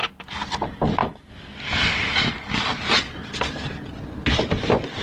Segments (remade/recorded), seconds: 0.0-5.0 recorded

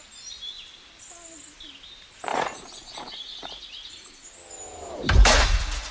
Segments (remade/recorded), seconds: 0.0-2.3 recorded; 2.3-3.9 remade; 3.9-5.9 recorded

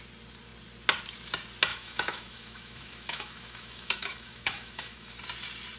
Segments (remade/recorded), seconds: 0.0-1.7 recorded; 1.7-5.2 remade; 5.2-5.8 recorded

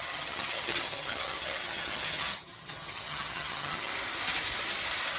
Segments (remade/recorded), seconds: 0.0-3.9 remade; 3.9-5.2 recorded

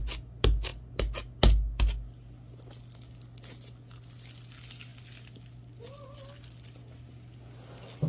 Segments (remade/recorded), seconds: 0.0-8.1 recorded

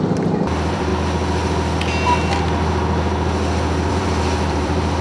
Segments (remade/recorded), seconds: 0.0-0.9 remade; 0.9-3.9 recorded; 3.9-5.0 remade